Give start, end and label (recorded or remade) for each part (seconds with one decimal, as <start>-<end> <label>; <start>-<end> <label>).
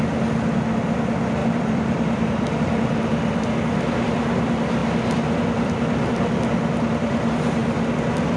0.0-1.4 recorded; 1.4-2.6 remade; 2.6-8.4 recorded